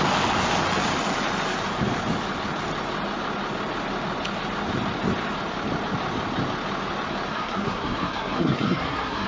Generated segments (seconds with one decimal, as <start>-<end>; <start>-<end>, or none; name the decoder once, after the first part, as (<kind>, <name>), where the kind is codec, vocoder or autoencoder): 7.3-9.3 (codec, SNAC)